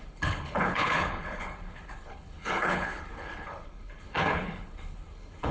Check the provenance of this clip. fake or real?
fake